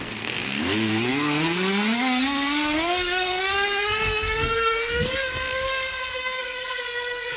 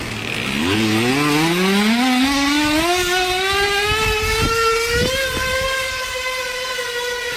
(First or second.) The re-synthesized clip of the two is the first